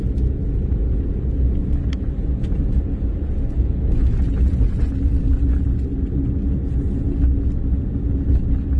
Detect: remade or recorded recorded